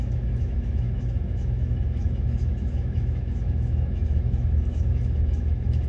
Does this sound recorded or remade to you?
remade